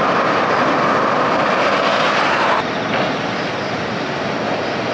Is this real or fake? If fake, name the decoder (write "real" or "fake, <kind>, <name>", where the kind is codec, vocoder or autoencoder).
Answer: real